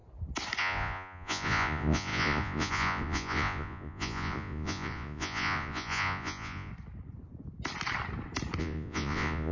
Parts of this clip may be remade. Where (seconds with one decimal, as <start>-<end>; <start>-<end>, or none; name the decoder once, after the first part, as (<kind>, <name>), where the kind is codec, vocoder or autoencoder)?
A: 0.6-6.7 (vocoder, Vocos); 8.6-9.5